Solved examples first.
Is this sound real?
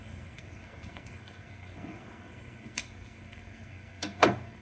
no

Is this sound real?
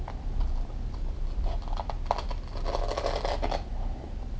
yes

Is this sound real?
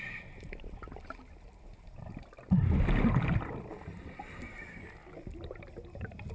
yes